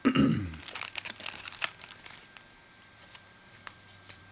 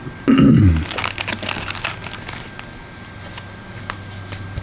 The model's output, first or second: first